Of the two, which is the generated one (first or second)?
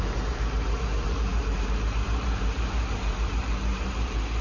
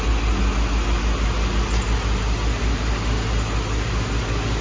first